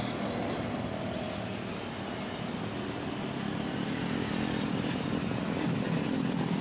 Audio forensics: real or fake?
real